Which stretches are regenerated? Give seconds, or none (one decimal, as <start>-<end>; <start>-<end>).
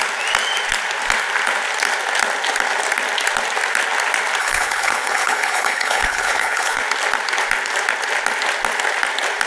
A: 4.4-6.8